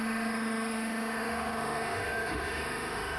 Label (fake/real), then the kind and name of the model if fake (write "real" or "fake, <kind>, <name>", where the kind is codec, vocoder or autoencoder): fake, autoencoder, DAC-VAE